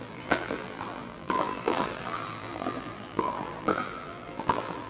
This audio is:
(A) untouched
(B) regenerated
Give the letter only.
B